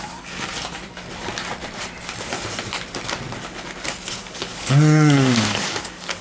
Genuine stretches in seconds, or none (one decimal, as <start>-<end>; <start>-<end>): 0.5-4.2